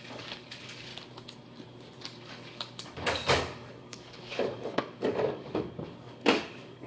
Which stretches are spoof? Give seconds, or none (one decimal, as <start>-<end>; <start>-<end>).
0.0-0.9; 2.2-6.9